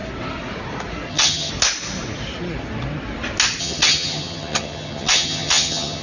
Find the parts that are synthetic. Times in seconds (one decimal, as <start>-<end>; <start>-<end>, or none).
1.1-1.5; 3.6-6.0